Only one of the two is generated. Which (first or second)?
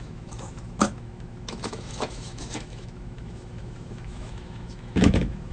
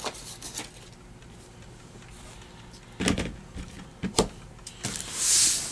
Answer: first